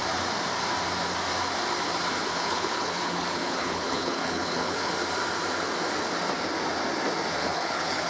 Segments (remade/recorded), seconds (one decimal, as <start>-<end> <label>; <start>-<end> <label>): 0.0-2.3 recorded; 2.3-4.9 remade; 4.9-7.4 recorded; 7.4-8.1 remade